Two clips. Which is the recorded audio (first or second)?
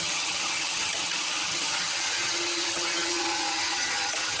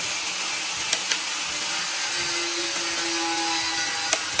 second